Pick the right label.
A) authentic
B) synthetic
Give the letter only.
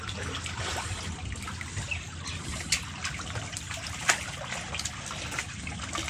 A